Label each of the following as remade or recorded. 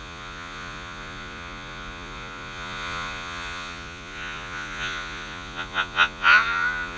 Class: remade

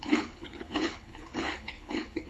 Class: remade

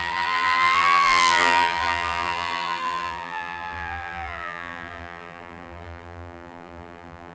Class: remade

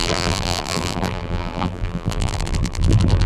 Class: remade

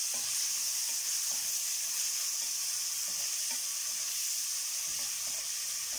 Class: recorded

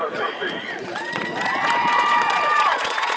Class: remade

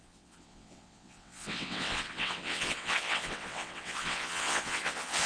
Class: remade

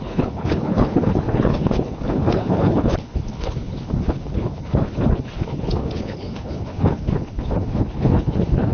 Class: remade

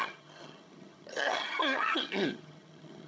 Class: remade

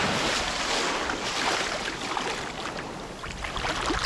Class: recorded